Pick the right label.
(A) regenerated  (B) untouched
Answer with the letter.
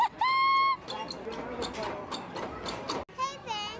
B